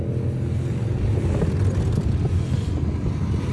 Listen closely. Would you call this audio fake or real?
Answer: real